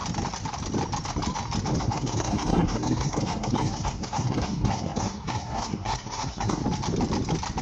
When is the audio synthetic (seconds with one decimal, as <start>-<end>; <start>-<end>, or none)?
1.8-6.6